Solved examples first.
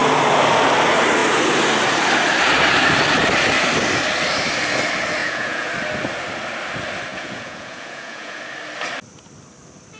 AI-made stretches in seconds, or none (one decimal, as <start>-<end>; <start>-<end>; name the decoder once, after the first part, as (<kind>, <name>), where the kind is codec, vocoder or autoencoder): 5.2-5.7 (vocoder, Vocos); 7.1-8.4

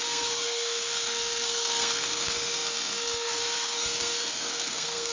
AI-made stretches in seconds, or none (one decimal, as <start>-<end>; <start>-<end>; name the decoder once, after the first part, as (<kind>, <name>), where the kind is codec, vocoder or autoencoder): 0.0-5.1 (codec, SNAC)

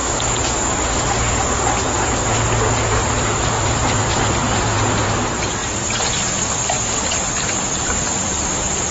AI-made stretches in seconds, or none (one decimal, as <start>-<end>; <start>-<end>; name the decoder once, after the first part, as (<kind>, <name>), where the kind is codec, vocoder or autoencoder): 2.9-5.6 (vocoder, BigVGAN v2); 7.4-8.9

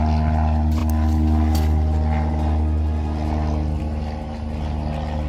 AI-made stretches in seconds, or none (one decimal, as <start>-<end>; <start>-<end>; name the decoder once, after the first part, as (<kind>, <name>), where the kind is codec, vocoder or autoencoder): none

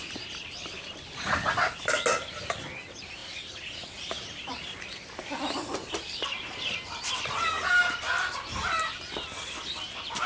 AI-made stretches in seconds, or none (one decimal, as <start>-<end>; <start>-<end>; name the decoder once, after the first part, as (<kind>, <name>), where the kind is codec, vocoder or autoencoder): 3.2-6.7 (vocoder, BigVGAN v2)

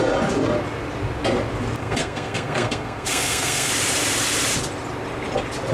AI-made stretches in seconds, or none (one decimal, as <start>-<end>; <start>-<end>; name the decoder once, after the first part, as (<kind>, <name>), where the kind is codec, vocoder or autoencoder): 1.8-3.7 (codec, SNAC)

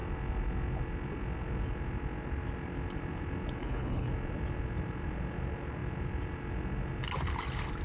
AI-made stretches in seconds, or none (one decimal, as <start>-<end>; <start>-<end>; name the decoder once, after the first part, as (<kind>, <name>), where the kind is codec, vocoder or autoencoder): 3.6-4.1 (codec, HILCodec)

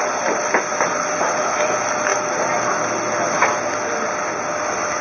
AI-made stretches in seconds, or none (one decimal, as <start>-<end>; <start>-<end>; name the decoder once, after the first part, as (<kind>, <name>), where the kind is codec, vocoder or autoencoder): none